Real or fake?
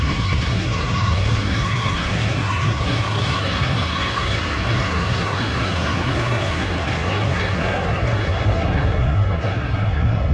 fake